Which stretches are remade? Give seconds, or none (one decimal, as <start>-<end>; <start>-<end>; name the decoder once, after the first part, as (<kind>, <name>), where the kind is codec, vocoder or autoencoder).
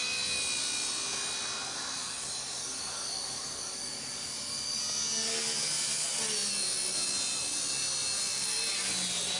2.0-4.8 (codec, DAC)